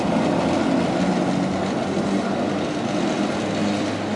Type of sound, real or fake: real